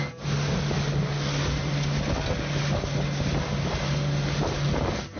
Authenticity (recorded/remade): recorded